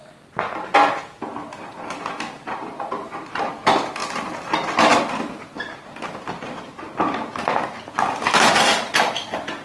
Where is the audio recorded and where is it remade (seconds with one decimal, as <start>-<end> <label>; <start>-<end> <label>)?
0.0-9.6 recorded